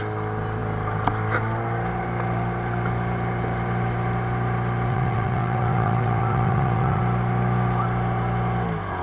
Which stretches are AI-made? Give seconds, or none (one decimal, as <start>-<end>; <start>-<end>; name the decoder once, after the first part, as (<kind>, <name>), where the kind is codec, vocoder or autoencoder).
4.9-7.0 (vocoder, WaveNeXt)